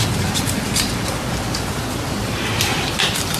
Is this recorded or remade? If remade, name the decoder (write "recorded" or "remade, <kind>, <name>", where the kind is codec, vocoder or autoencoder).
recorded